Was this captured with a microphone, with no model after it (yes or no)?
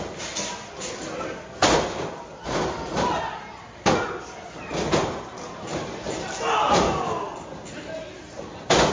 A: yes